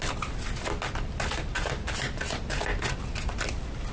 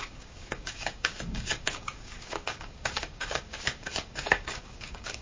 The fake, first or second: second